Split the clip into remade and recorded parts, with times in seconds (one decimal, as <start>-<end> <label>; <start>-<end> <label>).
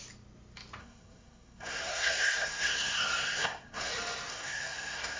0.0-0.8 recorded; 0.8-3.9 remade; 3.9-4.3 recorded; 4.3-5.2 remade